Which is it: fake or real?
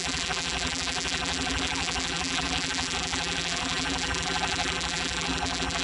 fake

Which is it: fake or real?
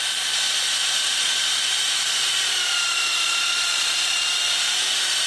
fake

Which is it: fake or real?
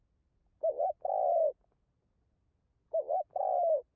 real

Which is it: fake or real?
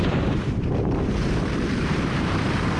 fake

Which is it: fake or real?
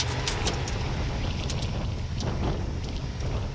real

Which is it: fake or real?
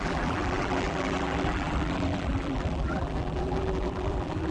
fake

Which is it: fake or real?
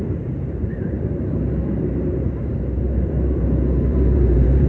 fake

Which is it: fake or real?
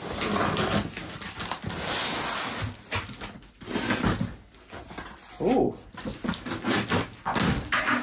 real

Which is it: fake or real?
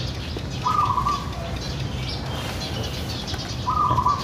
real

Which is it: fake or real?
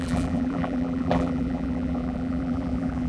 fake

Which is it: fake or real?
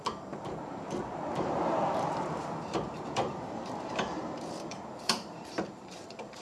fake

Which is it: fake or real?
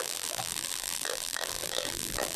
fake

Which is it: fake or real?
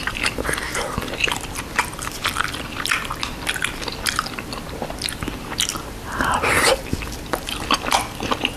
fake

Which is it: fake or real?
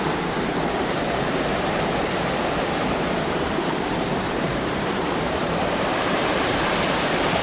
fake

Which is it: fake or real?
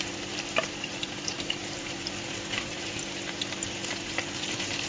fake